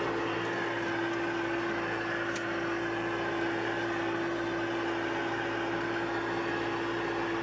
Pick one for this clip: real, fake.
real